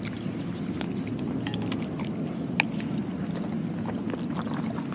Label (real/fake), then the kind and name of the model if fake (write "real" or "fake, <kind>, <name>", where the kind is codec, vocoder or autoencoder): real